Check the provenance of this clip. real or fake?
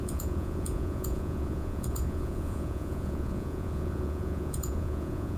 fake